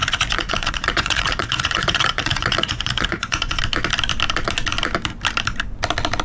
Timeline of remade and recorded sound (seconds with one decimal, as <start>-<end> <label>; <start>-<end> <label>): 0.0-3.6 remade; 3.6-6.2 recorded

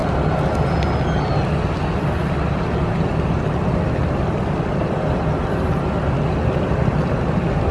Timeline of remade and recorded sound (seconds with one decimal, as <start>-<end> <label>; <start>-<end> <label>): 0.0-7.7 recorded